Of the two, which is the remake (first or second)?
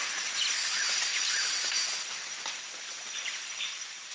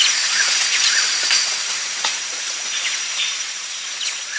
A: second